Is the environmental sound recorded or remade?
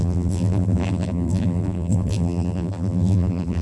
remade